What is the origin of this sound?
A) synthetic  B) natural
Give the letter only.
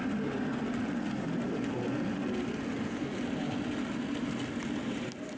B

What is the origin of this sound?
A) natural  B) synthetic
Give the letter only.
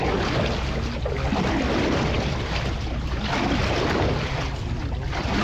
A